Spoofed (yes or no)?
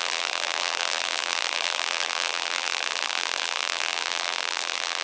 yes